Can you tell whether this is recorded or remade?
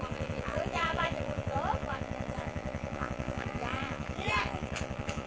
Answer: remade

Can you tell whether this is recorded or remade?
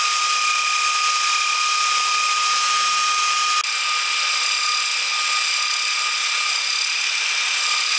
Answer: recorded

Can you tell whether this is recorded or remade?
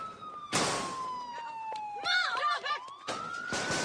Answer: recorded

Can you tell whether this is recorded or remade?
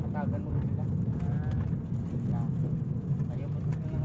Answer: recorded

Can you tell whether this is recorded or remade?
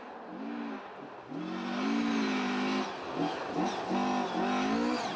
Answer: recorded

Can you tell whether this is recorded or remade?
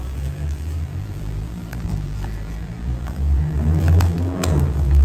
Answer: remade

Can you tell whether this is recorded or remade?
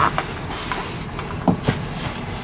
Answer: recorded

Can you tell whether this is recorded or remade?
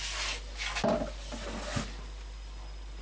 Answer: recorded